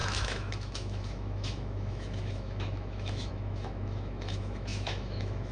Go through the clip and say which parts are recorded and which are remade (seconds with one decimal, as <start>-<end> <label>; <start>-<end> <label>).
0.0-5.5 remade